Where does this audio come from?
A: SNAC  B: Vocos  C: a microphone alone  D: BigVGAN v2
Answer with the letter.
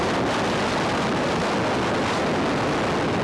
C